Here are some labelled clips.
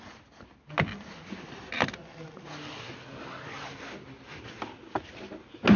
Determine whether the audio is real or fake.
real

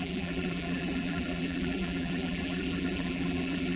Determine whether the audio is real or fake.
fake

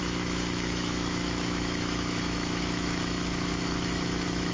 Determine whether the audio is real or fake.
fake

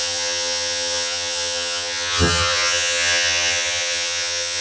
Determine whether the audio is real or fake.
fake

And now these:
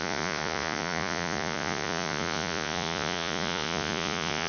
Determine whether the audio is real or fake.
fake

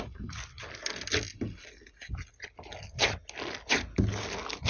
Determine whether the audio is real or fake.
real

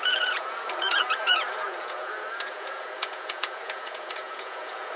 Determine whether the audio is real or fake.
fake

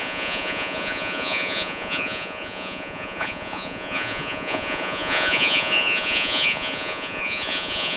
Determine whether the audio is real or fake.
fake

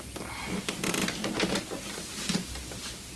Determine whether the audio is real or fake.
real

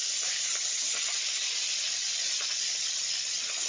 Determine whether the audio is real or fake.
real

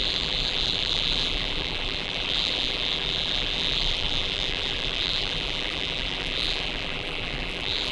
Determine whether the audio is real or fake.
fake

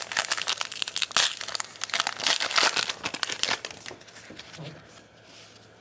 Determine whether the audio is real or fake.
real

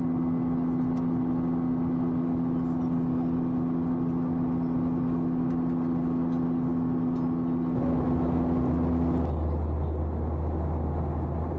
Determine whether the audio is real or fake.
real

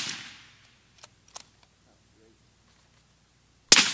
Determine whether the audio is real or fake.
real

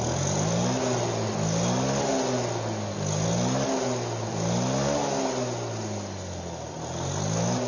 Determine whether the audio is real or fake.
real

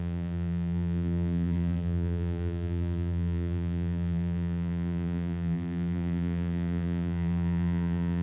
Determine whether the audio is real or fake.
fake